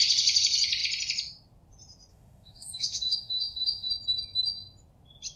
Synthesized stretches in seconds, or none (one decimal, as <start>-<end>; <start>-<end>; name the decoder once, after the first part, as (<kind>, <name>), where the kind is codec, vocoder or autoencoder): 2.1-3.9 (autoencoder, DAC-VAE)